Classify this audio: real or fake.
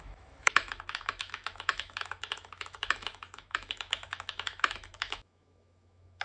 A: fake